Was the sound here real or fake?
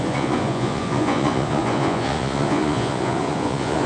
fake